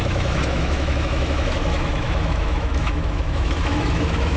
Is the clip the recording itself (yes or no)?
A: no